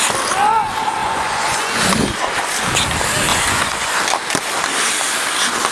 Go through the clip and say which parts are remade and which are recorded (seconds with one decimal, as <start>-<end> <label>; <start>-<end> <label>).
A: 0.0-1.0 recorded; 1.0-1.8 remade; 1.8-3.3 recorded; 3.3-4.0 remade; 4.0-5.7 recorded